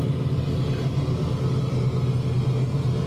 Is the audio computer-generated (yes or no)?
no